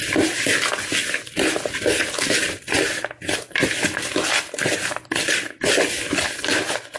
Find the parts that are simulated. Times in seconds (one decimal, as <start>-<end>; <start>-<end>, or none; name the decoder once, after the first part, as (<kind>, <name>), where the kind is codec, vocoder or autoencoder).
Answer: none